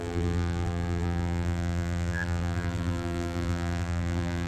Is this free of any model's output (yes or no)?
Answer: no